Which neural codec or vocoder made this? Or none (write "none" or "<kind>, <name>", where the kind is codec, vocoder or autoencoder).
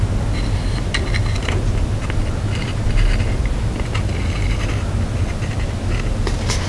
none